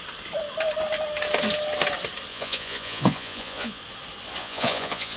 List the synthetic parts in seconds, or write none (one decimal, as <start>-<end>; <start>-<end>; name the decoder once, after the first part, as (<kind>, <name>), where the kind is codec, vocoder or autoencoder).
2.3-3.8 (vocoder, Vocos); 4.4-5.2